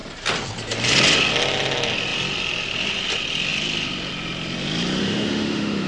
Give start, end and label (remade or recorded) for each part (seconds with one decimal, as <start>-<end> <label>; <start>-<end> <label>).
0.0-5.0 recorded; 5.0-5.9 remade